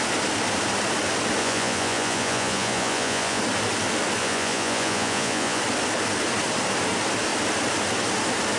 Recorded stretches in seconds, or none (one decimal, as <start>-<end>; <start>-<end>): 0.0-1.4; 3.4-4.2; 5.6-8.6